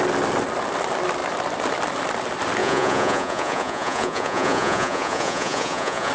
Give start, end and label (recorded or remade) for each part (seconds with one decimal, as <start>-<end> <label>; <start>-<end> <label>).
0.0-2.6 recorded; 2.6-6.1 remade

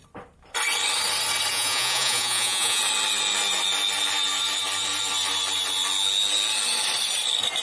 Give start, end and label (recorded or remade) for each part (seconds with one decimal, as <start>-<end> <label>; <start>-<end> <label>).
0.0-1.5 recorded; 1.5-2.8 remade; 2.8-7.6 recorded

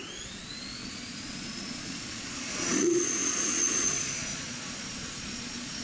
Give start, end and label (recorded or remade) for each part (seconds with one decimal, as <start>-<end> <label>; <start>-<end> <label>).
0.0-5.8 remade

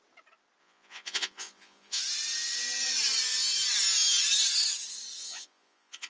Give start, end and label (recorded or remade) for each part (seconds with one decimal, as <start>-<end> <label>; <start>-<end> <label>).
0.0-0.6 recorded; 0.6-2.0 remade; 2.0-5.2 recorded; 5.2-6.1 remade

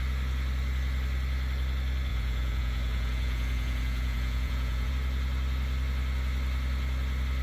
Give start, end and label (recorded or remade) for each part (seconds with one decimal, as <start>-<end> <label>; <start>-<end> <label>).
0.0-2.1 recorded; 2.1-4.9 remade; 4.9-7.4 recorded

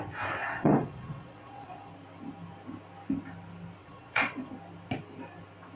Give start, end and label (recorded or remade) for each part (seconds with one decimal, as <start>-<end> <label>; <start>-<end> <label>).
0.0-0.4 recorded; 0.4-1.9 remade; 1.9-3.8 recorded; 3.8-4.5 remade; 4.5-5.8 recorded

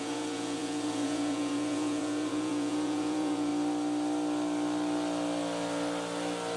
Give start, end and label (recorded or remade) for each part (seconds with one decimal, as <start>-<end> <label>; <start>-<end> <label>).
0.0-3.5 remade; 3.5-6.6 recorded